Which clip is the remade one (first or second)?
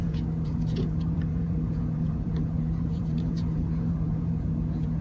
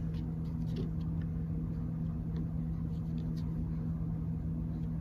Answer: first